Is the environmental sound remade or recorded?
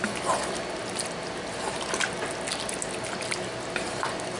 recorded